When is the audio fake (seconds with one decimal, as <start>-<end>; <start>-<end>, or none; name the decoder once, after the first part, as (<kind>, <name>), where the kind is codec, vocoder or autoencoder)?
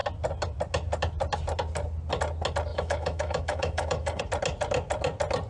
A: 2.7-4.2 (autoencoder, DAC-VAE)